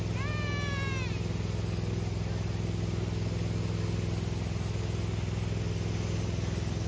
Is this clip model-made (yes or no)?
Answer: no